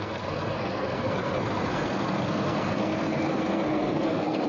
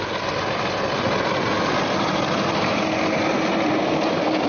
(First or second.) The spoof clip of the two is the first